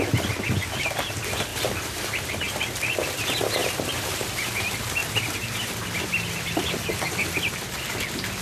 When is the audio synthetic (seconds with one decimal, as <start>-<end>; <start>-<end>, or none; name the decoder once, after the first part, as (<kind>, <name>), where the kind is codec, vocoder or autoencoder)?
1.5-2.6 (vocoder, BigVGAN v2); 3.6-4.5; 5.0-5.7